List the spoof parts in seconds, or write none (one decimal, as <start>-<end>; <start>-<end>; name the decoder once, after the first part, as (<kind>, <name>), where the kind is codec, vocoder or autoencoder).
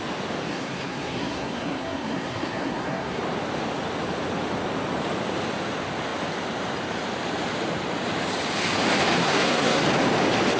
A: 0.5-3.2 (codec, SNAC); 9.2-9.8